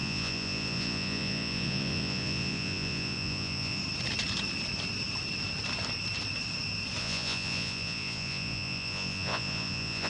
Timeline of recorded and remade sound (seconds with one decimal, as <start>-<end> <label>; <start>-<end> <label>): 0.0-3.8 remade; 3.8-7.0 recorded; 7.0-10.1 remade

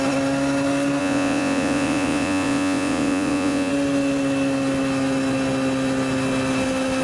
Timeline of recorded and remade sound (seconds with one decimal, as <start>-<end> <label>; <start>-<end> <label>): 0.0-1.0 recorded; 1.0-3.7 remade; 3.7-7.0 recorded

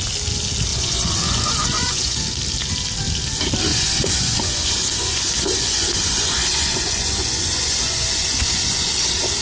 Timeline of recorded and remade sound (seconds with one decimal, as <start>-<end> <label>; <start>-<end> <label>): 0.0-0.7 recorded; 0.7-2.2 remade; 2.2-3.7 recorded; 3.7-8.9 remade; 8.9-9.4 recorded